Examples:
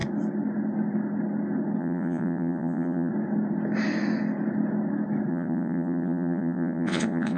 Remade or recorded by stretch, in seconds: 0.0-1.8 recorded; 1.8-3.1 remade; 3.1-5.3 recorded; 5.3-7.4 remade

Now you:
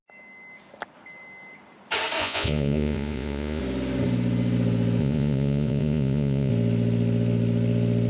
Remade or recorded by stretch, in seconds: 0.0-2.2 recorded; 2.2-3.6 remade; 3.6-5.0 recorded; 5.0-6.5 remade; 6.5-8.1 recorded

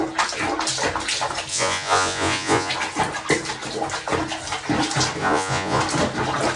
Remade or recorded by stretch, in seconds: 0.0-1.5 recorded; 1.5-2.7 remade; 2.7-5.2 recorded; 5.2-5.8 remade; 5.8-6.6 recorded

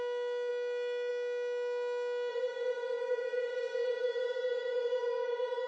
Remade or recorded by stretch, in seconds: 0.0-2.3 recorded; 2.3-5.7 remade